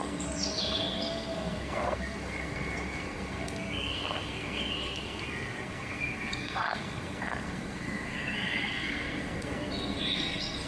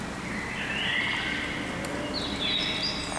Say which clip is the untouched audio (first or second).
second